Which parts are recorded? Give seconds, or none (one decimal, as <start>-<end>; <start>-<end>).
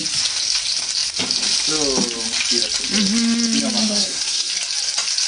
0.0-3.8; 4.5-5.3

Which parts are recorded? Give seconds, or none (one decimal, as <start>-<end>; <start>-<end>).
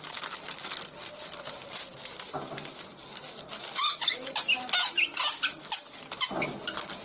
0.0-7.0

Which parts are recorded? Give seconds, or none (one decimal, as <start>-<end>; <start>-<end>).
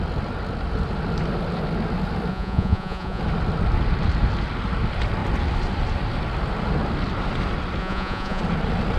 0.0-2.3; 3.2-7.8; 8.4-9.0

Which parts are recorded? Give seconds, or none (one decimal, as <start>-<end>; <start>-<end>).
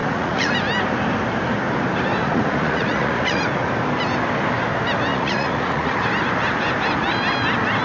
0.5-2.2; 3.4-5.1; 6.0-7.8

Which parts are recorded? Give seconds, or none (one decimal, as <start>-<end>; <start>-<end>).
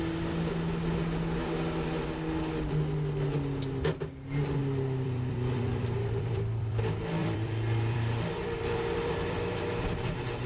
0.0-4.6; 6.8-7.2; 10.1-10.5